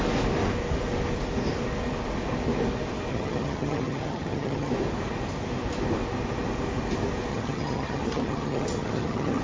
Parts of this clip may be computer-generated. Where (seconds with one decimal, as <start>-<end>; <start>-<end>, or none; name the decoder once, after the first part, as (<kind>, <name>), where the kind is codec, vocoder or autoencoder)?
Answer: 3.1-4.7 (vocoder, HiFi-GAN); 7.3-9.4